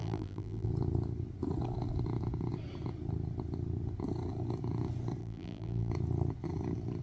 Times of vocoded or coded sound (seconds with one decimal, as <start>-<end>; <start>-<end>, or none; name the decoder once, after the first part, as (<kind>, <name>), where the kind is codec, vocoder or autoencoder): 0.0-0.7 (vocoder, BigVGAN v2); 5.2-5.9